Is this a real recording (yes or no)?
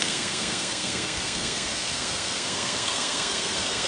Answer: no